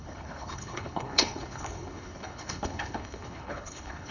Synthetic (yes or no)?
yes